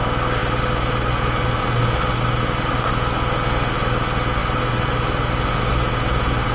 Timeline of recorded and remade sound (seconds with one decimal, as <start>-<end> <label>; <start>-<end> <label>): 0.0-6.5 recorded